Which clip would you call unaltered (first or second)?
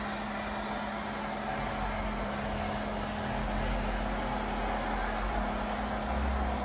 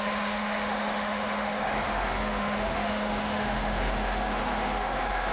first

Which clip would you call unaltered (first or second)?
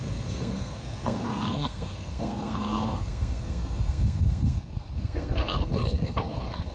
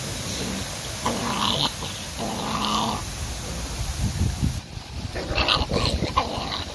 second